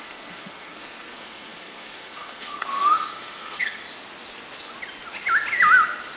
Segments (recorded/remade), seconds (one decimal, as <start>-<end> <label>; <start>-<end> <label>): 0.0-3.8 remade; 3.8-6.2 recorded